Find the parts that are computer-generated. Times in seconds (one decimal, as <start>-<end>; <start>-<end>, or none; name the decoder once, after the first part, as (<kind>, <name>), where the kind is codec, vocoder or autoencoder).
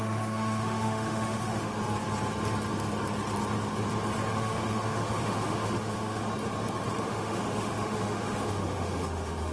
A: 0.0-1.8 (autoencoder, DAC-VAE); 4.3-6.3; 7.0-9.5